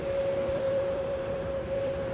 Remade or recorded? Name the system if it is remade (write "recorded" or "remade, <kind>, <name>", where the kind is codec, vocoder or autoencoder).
remade, vocoder, BigVGAN v2